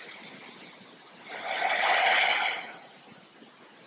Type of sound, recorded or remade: recorded